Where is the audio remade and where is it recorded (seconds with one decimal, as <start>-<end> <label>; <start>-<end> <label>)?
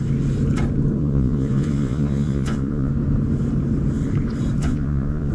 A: 0.0-1.0 recorded; 1.0-2.9 remade; 2.9-4.6 recorded; 4.6-5.3 remade